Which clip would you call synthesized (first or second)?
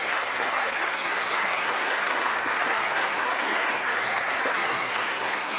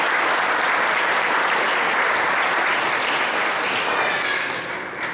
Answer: first